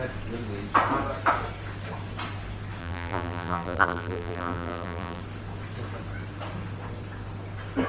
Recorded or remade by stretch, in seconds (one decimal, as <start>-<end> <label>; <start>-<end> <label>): 0.0-2.8 recorded; 2.8-5.2 remade; 5.2-7.9 recorded